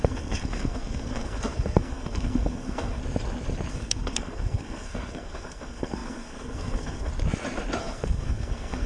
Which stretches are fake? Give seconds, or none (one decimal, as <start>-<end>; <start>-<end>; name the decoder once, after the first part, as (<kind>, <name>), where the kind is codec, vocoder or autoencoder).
0.0-3.0 (codec, SNAC); 3.7-7.1; 7.8-8.9